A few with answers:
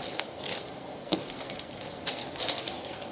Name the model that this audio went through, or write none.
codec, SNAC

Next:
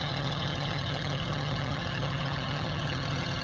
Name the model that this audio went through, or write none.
vocoder, HiFi-GAN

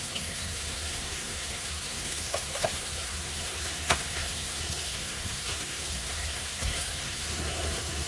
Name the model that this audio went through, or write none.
codec, SNAC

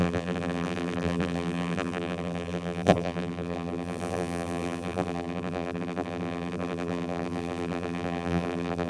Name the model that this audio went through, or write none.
vocoder, BigVGAN v2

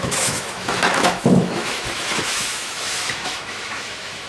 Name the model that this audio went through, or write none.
autoencoder, DAC-VAE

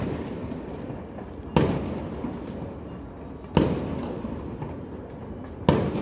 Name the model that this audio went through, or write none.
none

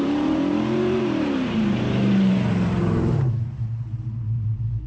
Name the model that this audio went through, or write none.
vocoder, BigVGAN v2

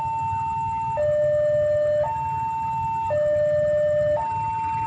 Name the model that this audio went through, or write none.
none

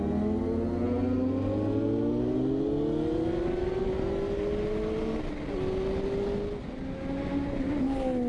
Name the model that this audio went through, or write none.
none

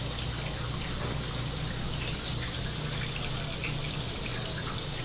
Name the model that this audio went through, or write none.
none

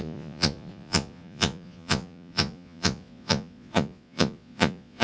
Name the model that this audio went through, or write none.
vocoder, Vocos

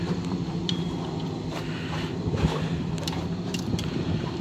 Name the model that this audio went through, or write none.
vocoder, BigVGAN v2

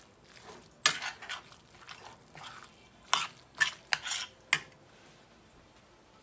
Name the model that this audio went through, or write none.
none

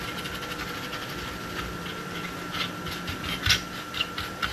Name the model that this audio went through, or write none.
none